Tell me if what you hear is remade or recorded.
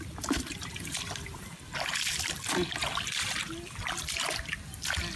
recorded